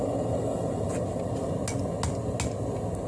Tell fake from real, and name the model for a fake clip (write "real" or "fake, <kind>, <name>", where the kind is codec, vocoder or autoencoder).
real